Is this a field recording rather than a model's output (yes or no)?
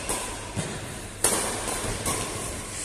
no